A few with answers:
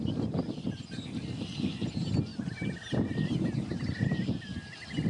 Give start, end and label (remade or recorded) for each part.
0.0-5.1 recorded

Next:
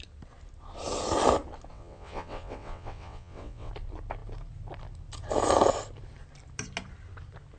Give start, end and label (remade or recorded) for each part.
0.0-1.7 recorded; 1.7-3.7 remade; 3.7-7.6 recorded

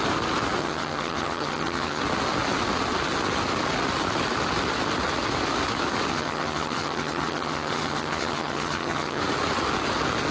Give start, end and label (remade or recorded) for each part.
0.0-0.6 recorded; 0.6-2.0 remade; 2.0-6.1 recorded; 6.1-9.2 remade; 9.2-10.3 recorded